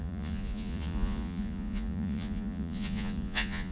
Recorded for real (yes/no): no